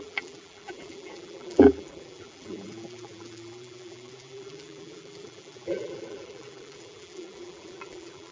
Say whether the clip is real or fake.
fake